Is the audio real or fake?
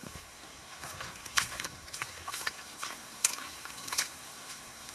fake